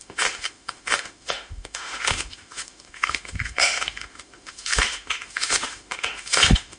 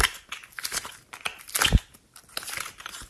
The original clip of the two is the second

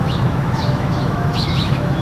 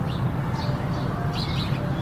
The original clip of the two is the second